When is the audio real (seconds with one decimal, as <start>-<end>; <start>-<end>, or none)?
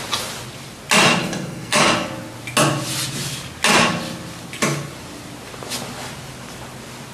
0.0-1.2; 1.8-7.1